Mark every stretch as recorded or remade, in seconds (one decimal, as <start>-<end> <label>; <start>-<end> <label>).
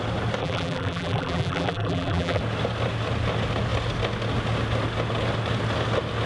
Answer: 0.0-0.4 recorded; 0.4-2.4 remade; 2.4-6.3 recorded